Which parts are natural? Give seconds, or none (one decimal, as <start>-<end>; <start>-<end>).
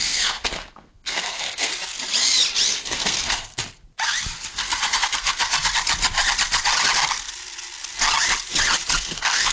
1.7-2.7; 3.6-4.5; 5.5-9.0